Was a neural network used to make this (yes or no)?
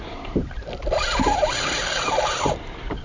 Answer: yes